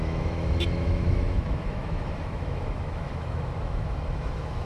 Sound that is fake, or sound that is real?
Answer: fake